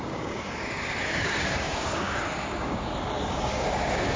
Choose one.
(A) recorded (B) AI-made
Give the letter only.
B